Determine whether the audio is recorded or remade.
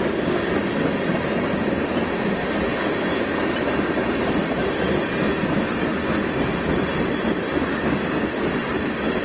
recorded